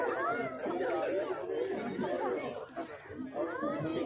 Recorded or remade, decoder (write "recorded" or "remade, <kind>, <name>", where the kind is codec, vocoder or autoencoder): recorded